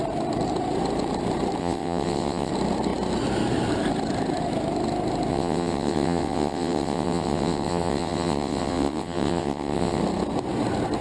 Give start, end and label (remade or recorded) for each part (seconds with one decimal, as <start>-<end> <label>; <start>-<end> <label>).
0.0-1.6 recorded; 1.6-2.5 remade; 2.5-5.3 recorded; 5.3-10.0 remade; 10.0-11.0 recorded